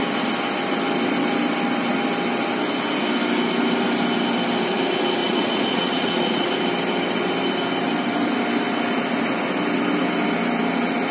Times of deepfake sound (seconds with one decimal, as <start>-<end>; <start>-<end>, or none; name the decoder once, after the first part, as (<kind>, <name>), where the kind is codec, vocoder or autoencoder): 5.2-6.5 (vocoder, Vocos)